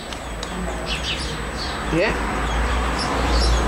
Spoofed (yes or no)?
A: no